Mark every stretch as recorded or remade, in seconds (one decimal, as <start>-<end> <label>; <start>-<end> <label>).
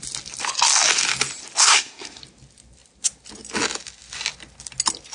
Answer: 0.0-1.6 recorded; 1.6-2.2 remade; 2.2-5.1 recorded